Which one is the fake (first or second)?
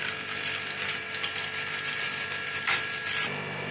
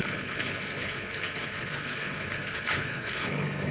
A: second